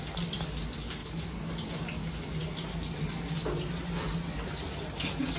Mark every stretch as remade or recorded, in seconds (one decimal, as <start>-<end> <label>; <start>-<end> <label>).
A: 0.0-5.4 recorded